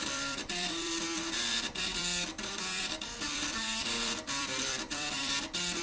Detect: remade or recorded remade